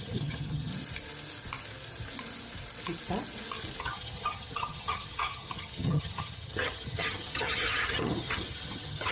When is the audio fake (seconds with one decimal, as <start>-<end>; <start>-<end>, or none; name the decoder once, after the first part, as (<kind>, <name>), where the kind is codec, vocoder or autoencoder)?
0.0-0.7 (vocoder, HiFi-GAN); 3.8-9.1